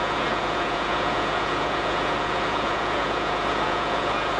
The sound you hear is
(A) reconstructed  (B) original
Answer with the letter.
A